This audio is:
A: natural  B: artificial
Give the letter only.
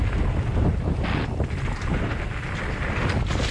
A